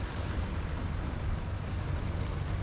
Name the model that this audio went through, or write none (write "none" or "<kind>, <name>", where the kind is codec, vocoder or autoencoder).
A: none